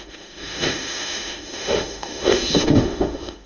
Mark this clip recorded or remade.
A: remade